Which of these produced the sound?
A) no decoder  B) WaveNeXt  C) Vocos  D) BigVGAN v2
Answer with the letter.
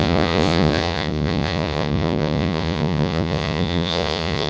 C